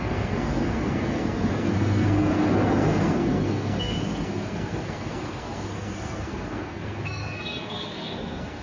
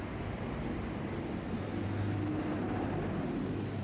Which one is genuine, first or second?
second